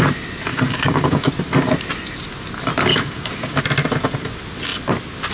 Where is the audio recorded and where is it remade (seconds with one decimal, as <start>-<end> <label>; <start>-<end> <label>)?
0.0-0.5 recorded; 0.5-1.3 remade; 1.3-2.9 recorded; 2.9-3.6 remade; 3.6-5.3 recorded